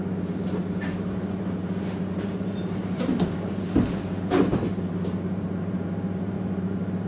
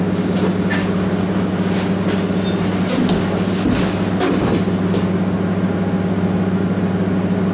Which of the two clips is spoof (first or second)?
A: first